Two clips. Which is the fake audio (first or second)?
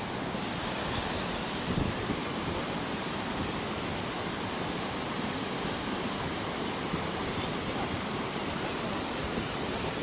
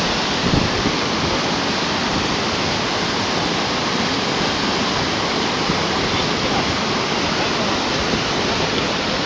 first